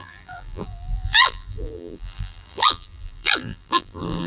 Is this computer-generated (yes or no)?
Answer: yes